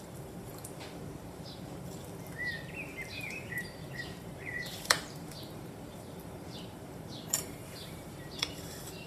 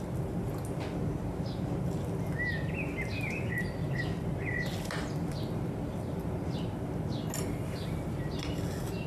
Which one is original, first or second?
second